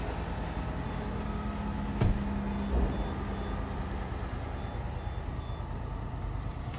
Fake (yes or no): no